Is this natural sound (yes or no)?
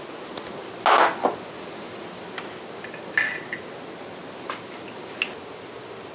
yes